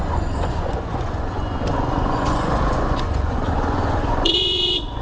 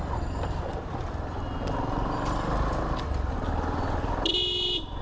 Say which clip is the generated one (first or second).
first